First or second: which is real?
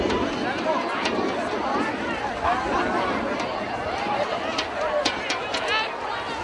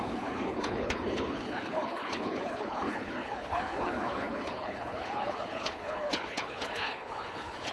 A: first